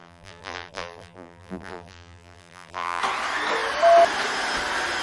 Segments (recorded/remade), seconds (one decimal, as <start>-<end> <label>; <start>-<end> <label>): 0.0-3.0 remade; 3.0-5.0 recorded